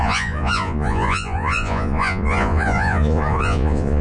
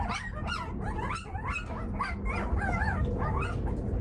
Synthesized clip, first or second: first